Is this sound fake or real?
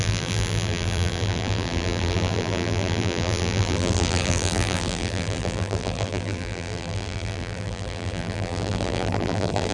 fake